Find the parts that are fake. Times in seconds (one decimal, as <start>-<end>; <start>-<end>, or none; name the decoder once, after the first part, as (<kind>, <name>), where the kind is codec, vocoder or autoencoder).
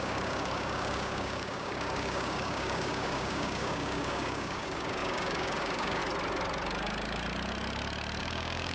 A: 0.0-6.0 (codec, DAC); 8.2-8.7